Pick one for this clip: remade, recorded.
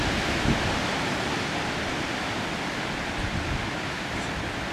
recorded